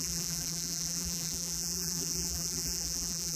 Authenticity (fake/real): fake